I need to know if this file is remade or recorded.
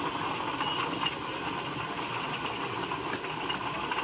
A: recorded